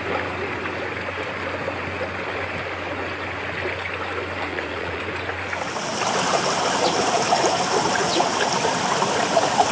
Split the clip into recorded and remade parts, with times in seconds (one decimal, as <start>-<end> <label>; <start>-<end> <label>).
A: 0.0-4.5 recorded; 4.5-5.0 remade; 5.0-9.7 recorded